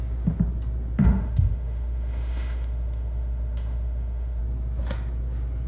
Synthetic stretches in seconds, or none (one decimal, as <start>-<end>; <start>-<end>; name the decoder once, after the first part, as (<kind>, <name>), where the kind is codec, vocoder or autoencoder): 1.0-4.4 (autoencoder, DAC-VAE)